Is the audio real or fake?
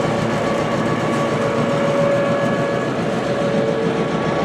real